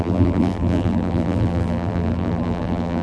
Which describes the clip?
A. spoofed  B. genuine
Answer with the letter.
A